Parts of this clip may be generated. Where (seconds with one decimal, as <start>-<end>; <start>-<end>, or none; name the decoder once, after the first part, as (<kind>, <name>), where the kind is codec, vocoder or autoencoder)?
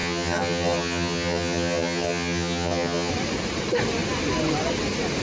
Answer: 0.0-3.1 (vocoder, HiFi-GAN)